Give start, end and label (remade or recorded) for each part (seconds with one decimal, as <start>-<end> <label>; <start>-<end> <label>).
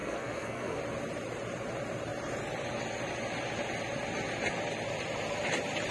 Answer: 0.0-0.8 remade; 0.8-5.9 recorded